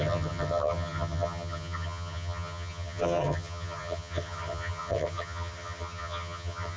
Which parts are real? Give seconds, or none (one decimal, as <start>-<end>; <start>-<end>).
none